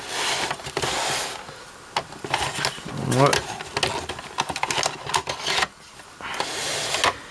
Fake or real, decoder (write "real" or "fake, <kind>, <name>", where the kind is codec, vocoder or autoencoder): real